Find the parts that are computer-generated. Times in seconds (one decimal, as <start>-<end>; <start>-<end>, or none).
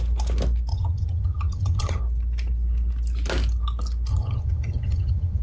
0.7-2.0; 4.1-5.4